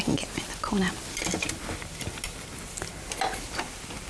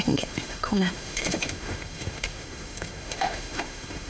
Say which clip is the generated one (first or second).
second